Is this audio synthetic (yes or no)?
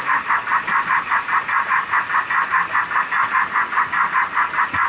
no